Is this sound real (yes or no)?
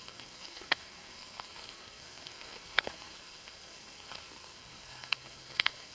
no